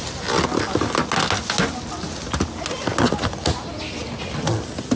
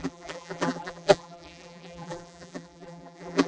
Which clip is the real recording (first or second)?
first